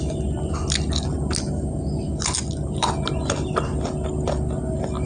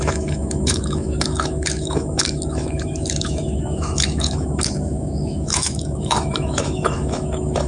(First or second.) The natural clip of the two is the first